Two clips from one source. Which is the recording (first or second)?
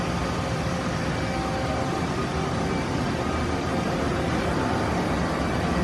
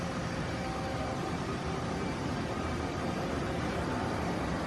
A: first